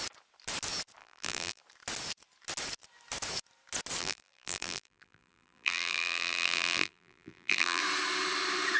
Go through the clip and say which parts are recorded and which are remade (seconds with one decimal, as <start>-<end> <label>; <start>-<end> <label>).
0.0-1.0 recorded; 1.0-1.6 remade; 1.6-4.0 recorded; 4.0-7.8 remade; 7.8-8.8 recorded